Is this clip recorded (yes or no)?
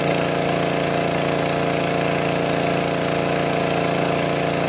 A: yes